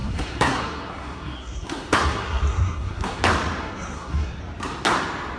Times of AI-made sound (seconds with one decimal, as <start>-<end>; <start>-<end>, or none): 0.0-3.2; 3.6-4.4